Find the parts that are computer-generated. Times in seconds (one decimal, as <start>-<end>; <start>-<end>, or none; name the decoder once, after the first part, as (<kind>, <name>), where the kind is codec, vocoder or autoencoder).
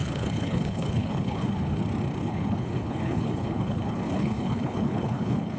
0.0-1.8 (codec, HILCodec); 2.2-5.6